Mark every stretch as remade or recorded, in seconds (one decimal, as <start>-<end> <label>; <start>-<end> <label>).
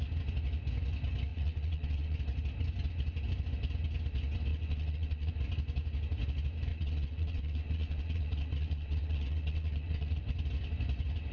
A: 0.0-1.3 recorded; 1.3-2.2 remade; 2.2-4.5 recorded; 4.5-5.3 remade; 5.3-6.7 recorded; 6.7-10.2 remade; 10.2-11.3 recorded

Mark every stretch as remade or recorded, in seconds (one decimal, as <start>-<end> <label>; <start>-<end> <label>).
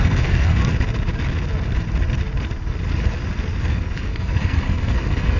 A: 0.0-0.6 remade; 0.6-3.7 recorded; 3.7-5.4 remade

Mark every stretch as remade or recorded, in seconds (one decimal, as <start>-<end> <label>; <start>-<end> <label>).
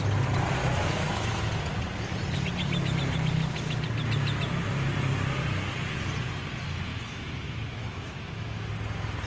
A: 0.0-0.6 recorded; 0.6-1.4 remade; 1.4-6.9 recorded; 6.9-8.7 remade; 8.7-9.3 recorded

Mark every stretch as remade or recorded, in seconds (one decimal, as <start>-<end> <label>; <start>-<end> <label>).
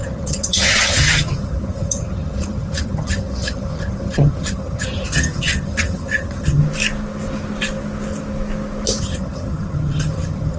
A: 0.0-6.6 remade; 6.6-9.0 recorded; 9.0-10.6 remade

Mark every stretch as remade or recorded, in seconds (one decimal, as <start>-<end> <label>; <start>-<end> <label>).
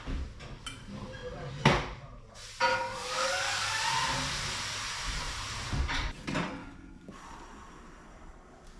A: 0.0-2.7 recorded; 2.7-3.8 remade; 3.8-6.6 recorded; 6.6-7.2 remade; 7.2-8.8 recorded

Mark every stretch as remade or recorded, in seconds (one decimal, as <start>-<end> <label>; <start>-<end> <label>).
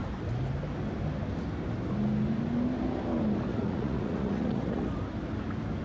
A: 0.0-3.5 recorded; 3.5-4.8 remade; 4.8-5.8 recorded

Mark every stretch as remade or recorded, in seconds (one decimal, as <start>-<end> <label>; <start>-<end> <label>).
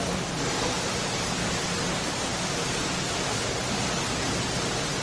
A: 0.0-5.0 recorded